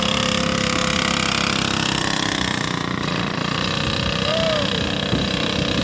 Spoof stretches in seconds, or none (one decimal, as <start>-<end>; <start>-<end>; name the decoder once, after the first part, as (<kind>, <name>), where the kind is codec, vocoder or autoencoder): 4.3-5.8 (vocoder, BigVGAN v2)